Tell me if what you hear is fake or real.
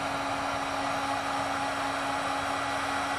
real